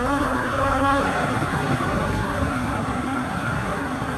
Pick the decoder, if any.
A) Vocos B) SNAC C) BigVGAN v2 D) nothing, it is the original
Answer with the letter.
B